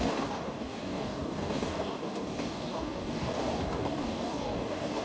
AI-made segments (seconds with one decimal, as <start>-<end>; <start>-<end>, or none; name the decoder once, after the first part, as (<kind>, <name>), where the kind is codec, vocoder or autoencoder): 0.0-5.0 (codec, DAC)